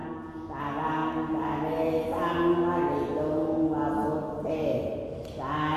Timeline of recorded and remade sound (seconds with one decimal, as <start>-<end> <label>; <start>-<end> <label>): 0.0-5.8 recorded